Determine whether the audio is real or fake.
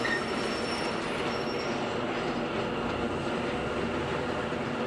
real